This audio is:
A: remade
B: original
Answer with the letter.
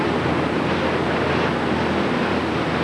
B